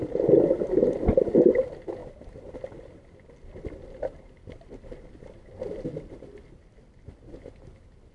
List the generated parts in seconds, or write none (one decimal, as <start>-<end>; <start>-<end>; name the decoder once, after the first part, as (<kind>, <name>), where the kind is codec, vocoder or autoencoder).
none